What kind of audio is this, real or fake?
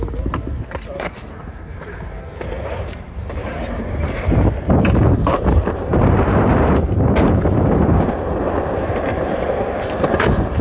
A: fake